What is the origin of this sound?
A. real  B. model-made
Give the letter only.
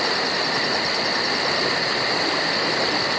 A